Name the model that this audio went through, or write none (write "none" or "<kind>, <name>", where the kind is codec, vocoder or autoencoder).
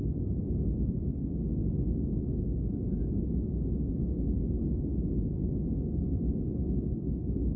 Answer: autoencoder, DAC-VAE